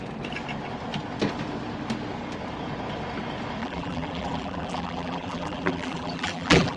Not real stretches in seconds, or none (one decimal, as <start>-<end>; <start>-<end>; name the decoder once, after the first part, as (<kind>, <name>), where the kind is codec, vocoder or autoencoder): 3.6-6.8 (vocoder, BigVGAN v2)